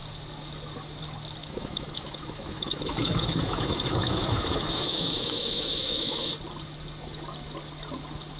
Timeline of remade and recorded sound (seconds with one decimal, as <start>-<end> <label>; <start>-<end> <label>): 0.0-1.4 recorded; 1.4-6.3 remade; 6.3-8.4 recorded